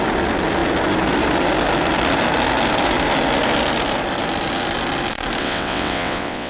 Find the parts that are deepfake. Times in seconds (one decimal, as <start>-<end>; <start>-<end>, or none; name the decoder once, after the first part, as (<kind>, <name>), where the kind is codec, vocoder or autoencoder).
5.4-6.5 (vocoder, WaveNeXt)